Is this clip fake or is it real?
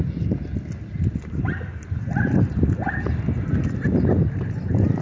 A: real